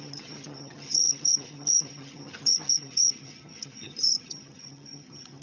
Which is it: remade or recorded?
remade